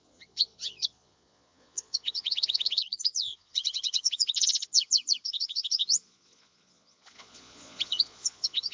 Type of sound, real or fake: fake